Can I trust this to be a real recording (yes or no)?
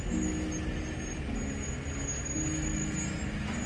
yes